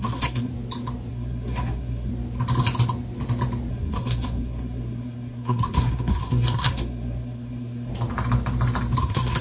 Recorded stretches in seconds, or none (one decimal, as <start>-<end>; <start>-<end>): 0.5-1.1; 2.1-3.7; 7.9-9.0